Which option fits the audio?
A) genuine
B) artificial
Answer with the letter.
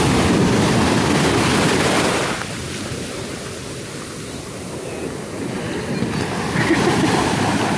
A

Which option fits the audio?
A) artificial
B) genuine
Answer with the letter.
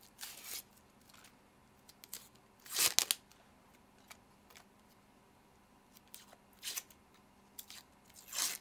B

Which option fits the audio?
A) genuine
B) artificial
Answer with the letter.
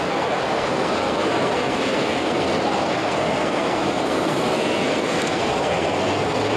B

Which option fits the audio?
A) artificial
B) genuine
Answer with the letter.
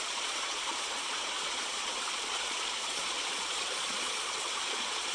A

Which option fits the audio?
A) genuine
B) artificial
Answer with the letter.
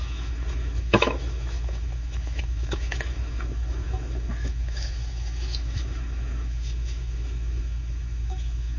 B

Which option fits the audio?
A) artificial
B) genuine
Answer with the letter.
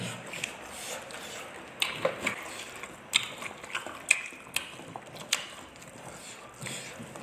B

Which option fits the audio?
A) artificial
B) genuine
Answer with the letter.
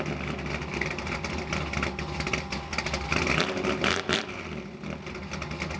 B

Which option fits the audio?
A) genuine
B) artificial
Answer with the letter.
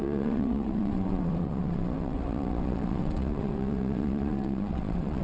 B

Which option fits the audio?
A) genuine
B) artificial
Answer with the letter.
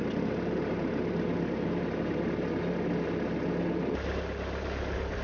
A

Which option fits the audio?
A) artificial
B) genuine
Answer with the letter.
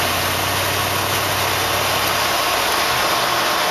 B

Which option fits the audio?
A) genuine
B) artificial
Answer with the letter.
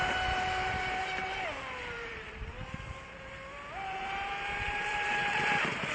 B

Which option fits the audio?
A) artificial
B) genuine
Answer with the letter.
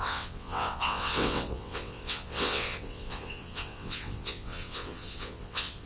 A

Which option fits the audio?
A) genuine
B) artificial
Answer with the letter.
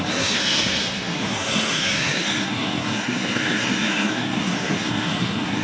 B